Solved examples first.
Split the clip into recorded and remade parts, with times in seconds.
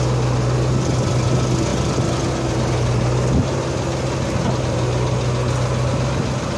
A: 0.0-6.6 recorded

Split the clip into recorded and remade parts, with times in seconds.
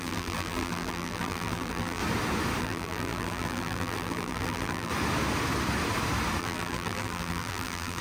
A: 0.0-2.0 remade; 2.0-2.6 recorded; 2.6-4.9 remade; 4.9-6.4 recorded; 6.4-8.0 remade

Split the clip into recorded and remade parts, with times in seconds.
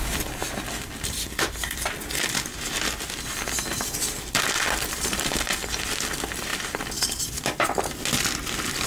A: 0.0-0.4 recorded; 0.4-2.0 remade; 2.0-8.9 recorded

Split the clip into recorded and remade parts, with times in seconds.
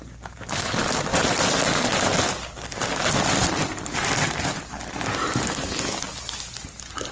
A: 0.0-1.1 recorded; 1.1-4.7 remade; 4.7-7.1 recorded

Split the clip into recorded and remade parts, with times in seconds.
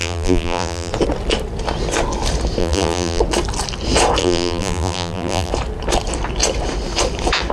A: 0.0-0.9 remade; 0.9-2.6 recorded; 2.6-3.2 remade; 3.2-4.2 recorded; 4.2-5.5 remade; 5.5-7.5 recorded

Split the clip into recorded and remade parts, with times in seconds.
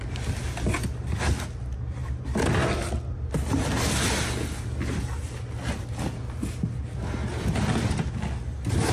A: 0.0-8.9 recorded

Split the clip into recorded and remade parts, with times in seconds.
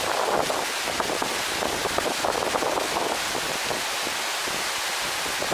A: 0.0-5.5 recorded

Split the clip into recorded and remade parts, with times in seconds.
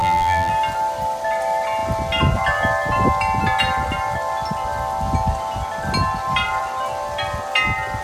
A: 0.0-0.5 remade; 0.5-8.0 recorded